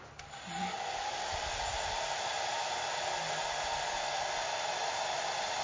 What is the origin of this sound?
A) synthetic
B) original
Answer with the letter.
B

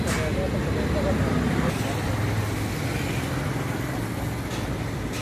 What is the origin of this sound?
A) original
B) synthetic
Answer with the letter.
A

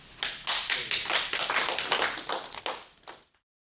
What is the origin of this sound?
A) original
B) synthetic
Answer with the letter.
A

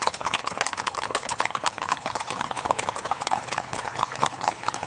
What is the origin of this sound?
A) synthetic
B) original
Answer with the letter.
A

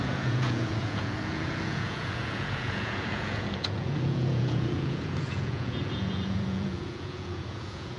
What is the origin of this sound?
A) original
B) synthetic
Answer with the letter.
B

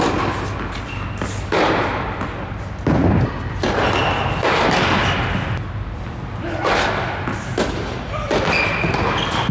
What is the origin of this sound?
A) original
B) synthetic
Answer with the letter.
A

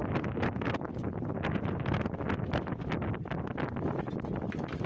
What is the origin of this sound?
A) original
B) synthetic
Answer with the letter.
A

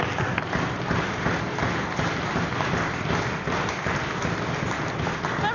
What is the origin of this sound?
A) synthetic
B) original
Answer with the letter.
B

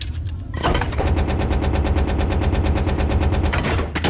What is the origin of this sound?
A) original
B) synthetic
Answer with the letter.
A